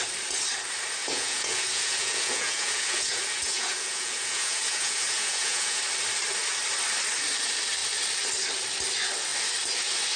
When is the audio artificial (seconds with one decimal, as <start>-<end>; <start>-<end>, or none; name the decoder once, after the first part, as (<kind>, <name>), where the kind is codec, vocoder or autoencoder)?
1.0-5.8 (vocoder, Vocos)